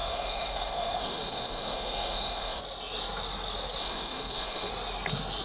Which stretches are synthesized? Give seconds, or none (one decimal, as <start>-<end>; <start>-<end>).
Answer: 0.0-2.6; 3.8-4.7